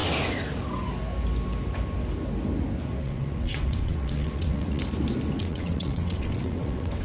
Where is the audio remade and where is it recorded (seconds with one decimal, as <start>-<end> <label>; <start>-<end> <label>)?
0.0-3.0 recorded; 3.0-4.8 remade; 4.8-5.4 recorded; 5.4-7.0 remade